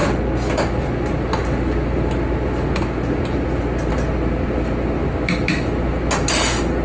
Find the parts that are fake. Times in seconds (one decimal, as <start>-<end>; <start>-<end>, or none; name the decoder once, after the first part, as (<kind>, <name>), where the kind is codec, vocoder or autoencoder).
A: none

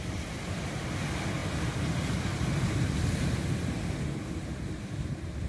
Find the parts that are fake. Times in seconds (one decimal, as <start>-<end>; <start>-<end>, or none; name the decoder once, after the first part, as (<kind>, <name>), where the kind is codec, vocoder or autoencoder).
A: none

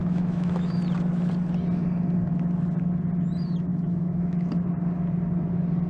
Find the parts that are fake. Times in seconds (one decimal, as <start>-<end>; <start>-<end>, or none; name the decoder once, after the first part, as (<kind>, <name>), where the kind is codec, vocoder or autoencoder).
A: 0.0-0.8 (autoencoder, DAC-VAE); 3.7-4.7

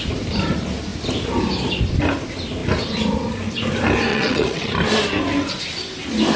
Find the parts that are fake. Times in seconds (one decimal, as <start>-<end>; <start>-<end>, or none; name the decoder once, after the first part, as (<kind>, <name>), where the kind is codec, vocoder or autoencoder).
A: 4.1-4.7 (vocoder, WaveNeXt)

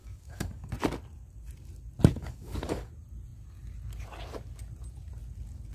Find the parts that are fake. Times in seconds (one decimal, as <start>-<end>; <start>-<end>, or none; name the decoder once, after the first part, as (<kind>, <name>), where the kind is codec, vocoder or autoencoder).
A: 0.0-0.7 (codec, DAC); 2.1-2.9